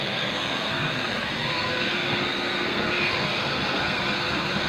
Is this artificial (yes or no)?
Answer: yes